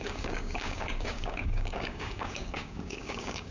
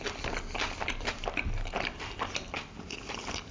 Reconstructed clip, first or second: first